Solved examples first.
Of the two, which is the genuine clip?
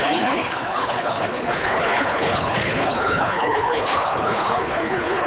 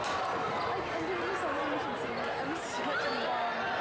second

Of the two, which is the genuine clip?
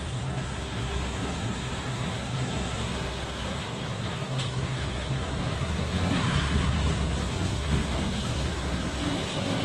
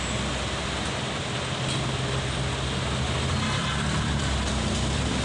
second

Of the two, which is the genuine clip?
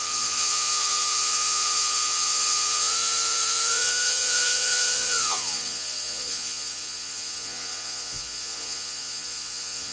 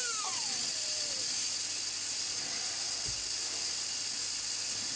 second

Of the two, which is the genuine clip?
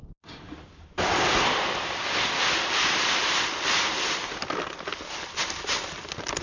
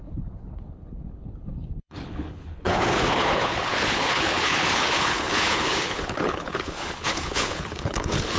first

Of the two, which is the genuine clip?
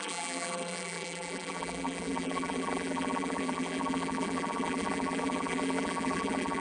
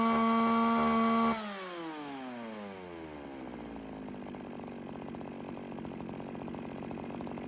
second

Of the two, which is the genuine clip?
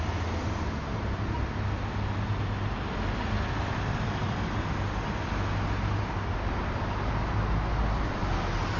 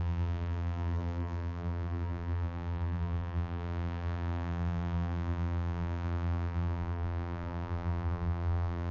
first